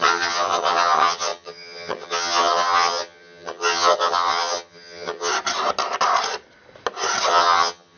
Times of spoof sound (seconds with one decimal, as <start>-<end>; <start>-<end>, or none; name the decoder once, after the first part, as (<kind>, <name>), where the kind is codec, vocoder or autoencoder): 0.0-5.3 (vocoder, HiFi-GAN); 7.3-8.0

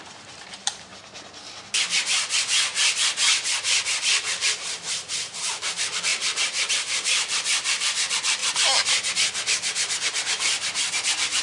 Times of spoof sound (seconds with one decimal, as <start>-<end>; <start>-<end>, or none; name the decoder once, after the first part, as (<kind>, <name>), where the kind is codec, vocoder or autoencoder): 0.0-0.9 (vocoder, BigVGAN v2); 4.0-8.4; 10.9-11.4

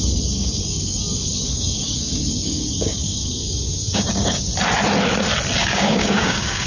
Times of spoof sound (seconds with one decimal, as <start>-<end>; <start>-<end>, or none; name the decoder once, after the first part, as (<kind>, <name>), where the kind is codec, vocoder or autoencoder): 0.0-4.5 (codec, DAC); 5.6-6.7